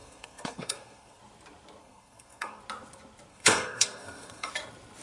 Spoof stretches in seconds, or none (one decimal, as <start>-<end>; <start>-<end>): 0.0-1.2; 1.8-2.6; 3.3-4.5